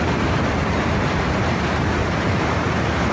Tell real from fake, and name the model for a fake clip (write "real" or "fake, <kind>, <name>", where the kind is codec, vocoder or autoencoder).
fake, vocoder, BigVGAN v2